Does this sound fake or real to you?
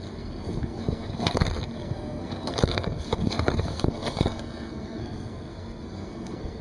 fake